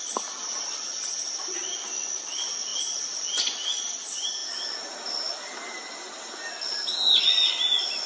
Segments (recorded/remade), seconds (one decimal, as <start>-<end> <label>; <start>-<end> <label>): 0.0-8.1 recorded